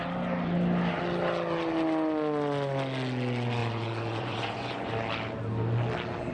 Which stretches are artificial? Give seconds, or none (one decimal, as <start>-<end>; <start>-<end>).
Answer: 3.6-4.9